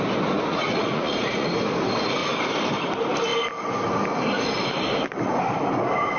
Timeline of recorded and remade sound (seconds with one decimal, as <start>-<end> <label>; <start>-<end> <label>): 0.0-0.5 recorded; 0.5-1.5 remade; 1.5-6.2 recorded